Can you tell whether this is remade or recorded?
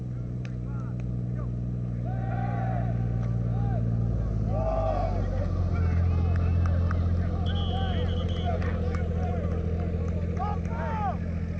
recorded